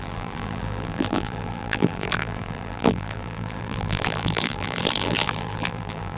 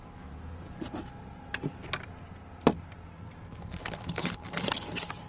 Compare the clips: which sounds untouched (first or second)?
second